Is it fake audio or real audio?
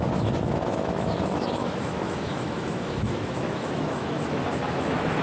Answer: fake